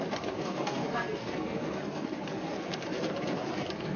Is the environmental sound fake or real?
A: fake